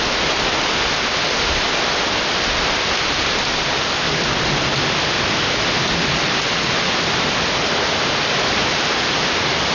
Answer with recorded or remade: recorded